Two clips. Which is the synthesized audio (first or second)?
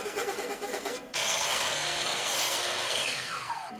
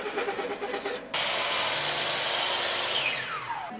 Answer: first